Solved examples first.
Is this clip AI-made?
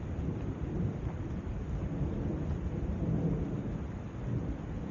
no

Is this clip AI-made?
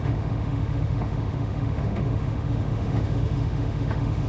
yes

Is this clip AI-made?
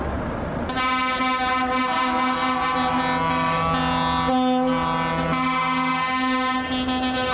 no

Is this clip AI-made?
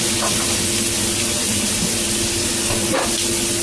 no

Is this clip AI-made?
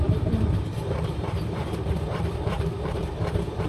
yes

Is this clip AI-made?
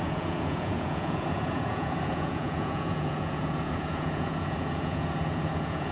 yes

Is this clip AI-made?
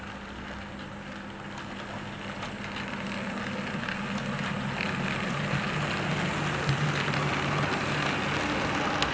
no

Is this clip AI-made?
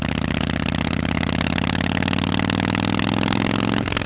no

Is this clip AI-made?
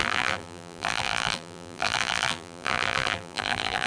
yes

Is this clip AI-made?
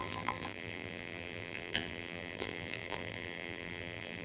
yes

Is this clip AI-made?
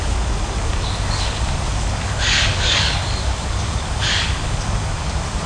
yes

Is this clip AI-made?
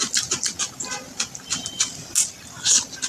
no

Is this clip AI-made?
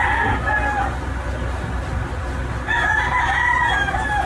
no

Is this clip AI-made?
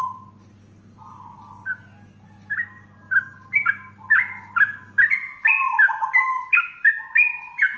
no